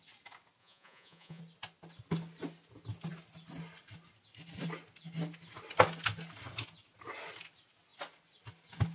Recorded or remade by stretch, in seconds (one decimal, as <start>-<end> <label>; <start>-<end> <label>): 0.0-0.6 recorded; 0.6-1.4 remade; 1.4-8.9 recorded